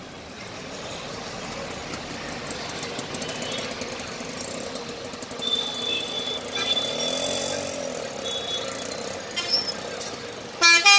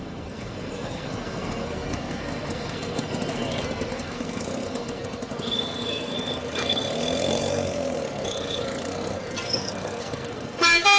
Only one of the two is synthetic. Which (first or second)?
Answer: second